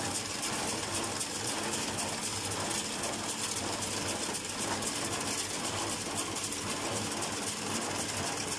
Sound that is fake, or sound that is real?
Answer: real